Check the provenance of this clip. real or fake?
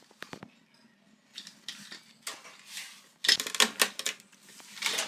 real